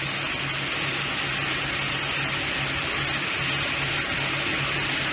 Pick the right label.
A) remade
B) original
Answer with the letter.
B